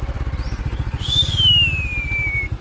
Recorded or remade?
recorded